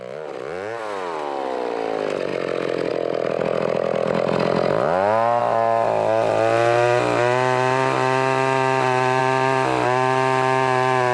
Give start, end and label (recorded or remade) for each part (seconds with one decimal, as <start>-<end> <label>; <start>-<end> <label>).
0.0-11.1 recorded